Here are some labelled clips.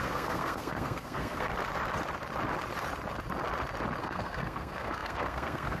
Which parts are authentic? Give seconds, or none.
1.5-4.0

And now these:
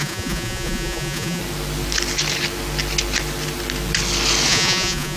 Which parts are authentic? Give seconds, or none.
1.4-4.5

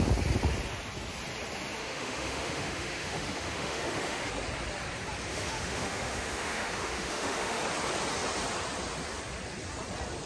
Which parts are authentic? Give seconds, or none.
0.0-1.8; 4.3-5.3; 7.6-10.3

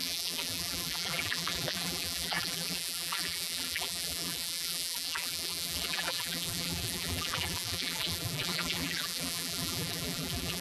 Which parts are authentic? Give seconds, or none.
none

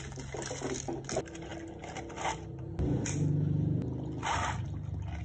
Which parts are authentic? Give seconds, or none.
0.0-5.2

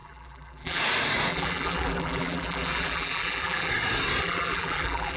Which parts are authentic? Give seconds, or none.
0.8-1.3; 3.7-4.2

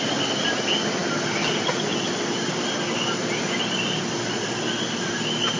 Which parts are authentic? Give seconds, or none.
0.0-5.6

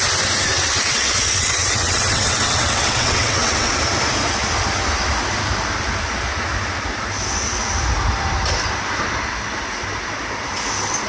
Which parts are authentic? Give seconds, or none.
0.0-0.5; 3.7-11.1